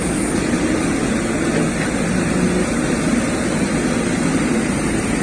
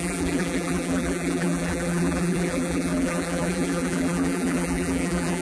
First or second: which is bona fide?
first